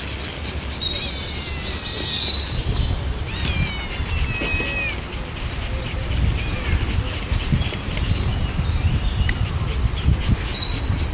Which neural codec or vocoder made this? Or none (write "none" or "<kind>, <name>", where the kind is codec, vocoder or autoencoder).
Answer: none